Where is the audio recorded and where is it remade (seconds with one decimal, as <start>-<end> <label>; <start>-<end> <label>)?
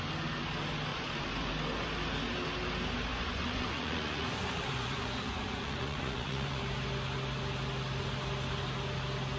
0.0-0.9 recorded; 0.9-1.5 remade; 1.5-3.1 recorded; 3.1-6.6 remade; 6.6-9.4 recorded